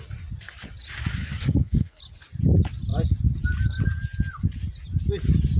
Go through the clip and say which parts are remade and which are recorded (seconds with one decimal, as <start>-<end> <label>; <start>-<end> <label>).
0.0-1.2 recorded; 1.2-2.0 remade; 2.0-5.6 recorded